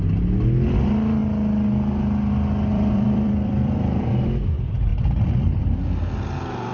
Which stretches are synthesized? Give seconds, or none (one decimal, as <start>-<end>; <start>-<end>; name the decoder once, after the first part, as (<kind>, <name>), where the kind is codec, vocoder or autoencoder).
2.7-4.1 (vocoder, BigVGAN v2)

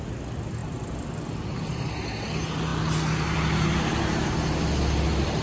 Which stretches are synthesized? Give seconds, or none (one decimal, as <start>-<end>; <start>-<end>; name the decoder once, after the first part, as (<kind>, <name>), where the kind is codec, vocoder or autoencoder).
none

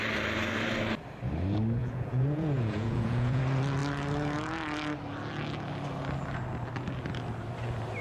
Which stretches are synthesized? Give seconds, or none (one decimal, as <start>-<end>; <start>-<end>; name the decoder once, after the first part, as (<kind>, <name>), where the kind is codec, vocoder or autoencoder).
1.8-3.4 (vocoder, Vocos)

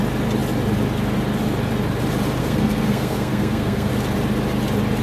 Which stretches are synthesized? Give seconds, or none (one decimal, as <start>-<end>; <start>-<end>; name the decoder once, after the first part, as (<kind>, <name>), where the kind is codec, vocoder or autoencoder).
2.4-3.9 (codec, SNAC)

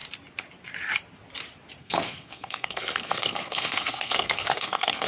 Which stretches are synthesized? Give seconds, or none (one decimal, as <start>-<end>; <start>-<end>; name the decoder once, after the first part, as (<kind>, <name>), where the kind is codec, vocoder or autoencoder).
1.8-5.1 (codec, SNAC)

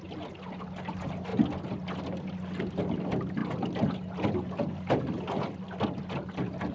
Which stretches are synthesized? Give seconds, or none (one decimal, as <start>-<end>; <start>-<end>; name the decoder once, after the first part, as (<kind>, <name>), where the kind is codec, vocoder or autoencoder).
none